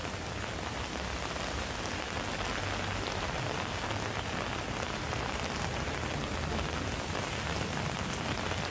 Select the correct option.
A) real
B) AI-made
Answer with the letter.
A